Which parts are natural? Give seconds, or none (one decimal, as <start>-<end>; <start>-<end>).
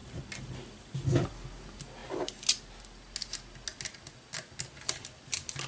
0.0-5.7